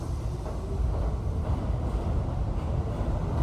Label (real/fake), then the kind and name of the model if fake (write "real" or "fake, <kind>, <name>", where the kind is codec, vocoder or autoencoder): real